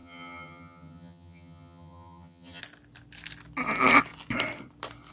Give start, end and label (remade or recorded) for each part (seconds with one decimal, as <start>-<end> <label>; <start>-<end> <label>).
0.0-2.6 remade; 2.6-5.1 recorded

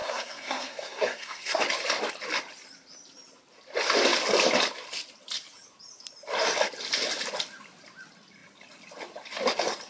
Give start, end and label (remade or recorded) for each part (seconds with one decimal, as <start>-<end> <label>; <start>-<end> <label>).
0.0-1.6 remade; 1.6-9.9 recorded

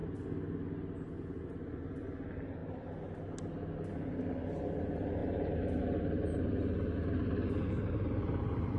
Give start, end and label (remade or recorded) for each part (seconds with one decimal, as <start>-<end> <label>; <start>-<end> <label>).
0.0-5.2 recorded; 5.2-5.8 remade; 5.8-8.8 recorded

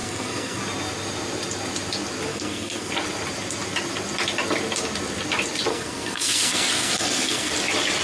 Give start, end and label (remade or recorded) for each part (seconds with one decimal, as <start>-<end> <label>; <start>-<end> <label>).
0.0-0.6 remade; 0.6-2.3 recorded; 2.3-2.9 remade; 2.9-5.7 recorded; 5.7-7.5 remade; 7.5-8.0 recorded

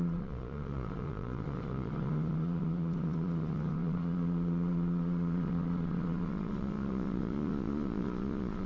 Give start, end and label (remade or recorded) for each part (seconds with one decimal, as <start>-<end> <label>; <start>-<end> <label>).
0.0-8.7 remade

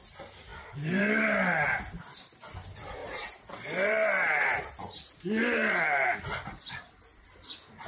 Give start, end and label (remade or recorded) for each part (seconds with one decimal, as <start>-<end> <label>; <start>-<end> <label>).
0.0-0.5 recorded; 0.5-1.0 remade; 1.0-3.0 recorded; 3.0-6.3 remade; 6.3-7.9 recorded